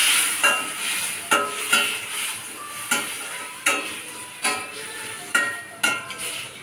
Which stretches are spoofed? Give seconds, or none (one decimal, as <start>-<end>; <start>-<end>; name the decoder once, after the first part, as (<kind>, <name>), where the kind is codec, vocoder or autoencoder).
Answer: 2.9-6.6 (vocoder, BigVGAN v2)